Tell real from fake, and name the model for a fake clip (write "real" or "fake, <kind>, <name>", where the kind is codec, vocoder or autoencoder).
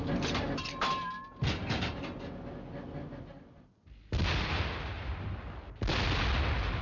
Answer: real